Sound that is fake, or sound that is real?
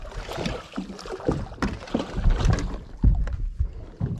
real